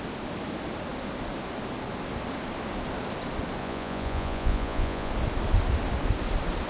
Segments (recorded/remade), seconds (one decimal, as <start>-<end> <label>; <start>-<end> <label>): 0.0-3.6 recorded; 3.6-5.1 remade; 5.1-6.7 recorded